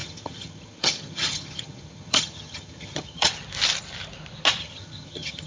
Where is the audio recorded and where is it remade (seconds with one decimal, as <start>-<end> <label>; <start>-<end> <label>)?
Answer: 0.0-3.3 remade; 3.3-4.6 recorded; 4.6-5.5 remade